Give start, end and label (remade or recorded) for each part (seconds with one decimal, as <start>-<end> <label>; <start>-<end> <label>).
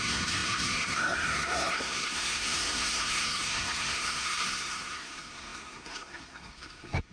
0.0-7.1 remade